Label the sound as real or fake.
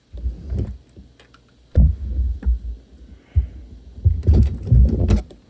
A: real